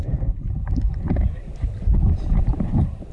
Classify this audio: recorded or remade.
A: remade